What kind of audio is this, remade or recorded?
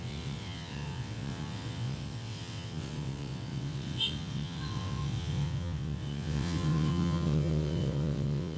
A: remade